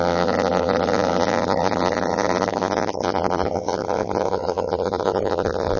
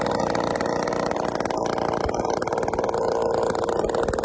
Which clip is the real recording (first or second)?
second